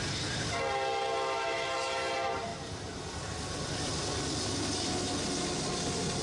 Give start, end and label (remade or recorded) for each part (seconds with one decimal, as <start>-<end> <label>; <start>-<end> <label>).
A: 0.0-6.2 recorded